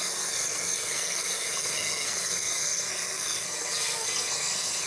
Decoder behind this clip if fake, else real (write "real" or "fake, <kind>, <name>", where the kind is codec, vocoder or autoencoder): fake, codec, SNAC